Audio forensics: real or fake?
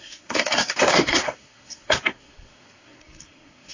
fake